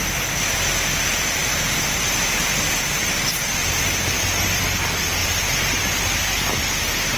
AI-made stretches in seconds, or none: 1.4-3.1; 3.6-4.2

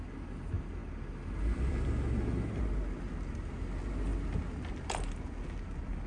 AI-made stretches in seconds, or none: none

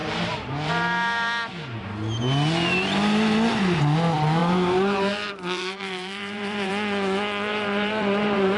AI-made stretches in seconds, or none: 0.0-0.7; 4.4-6.7; 7.5-8.6